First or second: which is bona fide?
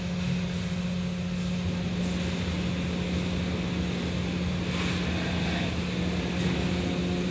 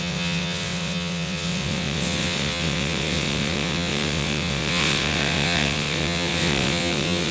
first